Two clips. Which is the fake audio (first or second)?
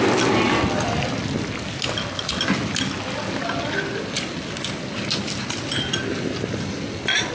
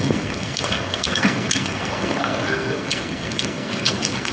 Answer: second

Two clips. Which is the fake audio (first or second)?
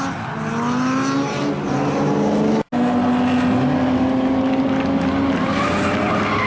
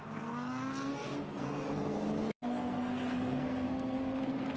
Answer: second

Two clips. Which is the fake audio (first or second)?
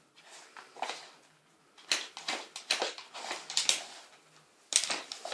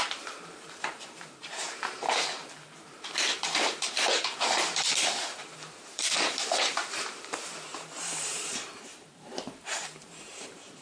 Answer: second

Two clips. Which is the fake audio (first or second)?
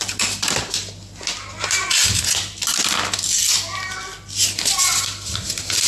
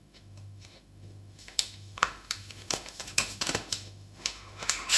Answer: second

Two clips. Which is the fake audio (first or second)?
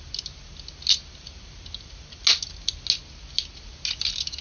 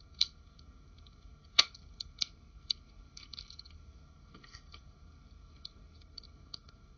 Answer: second